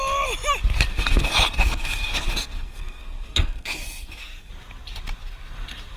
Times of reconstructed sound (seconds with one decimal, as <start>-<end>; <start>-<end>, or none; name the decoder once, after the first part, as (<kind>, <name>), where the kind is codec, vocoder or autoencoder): 0.9-4.5 (codec, SNAC)